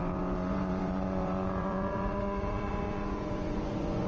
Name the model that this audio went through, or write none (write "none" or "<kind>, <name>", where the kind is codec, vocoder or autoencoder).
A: vocoder, Vocos